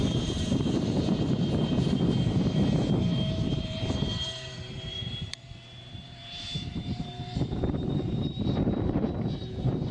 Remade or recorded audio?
remade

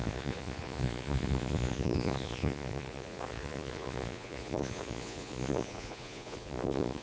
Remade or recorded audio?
remade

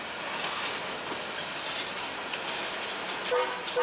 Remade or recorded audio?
recorded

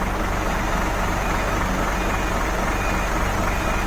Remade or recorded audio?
recorded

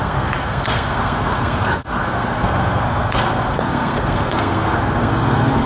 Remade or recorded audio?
remade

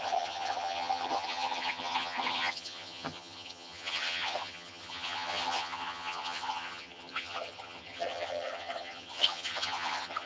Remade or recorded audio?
remade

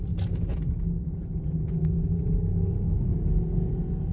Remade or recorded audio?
recorded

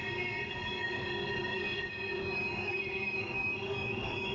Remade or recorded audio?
remade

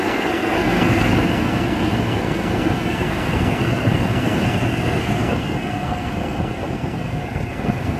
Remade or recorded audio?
remade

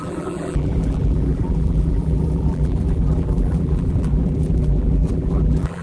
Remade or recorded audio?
remade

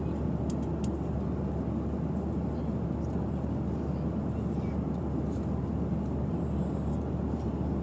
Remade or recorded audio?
recorded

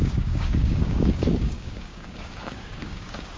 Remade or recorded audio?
remade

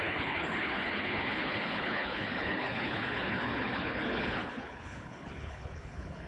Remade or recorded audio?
remade